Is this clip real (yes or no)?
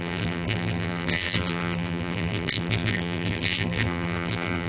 no